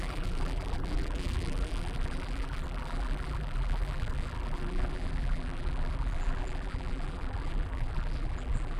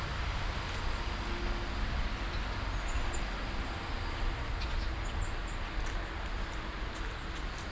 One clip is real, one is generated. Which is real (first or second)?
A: second